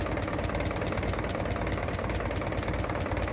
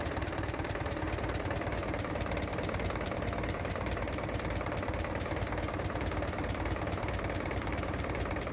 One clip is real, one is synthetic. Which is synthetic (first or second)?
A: second